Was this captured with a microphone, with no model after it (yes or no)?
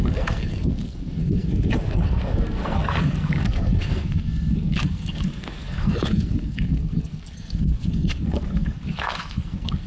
no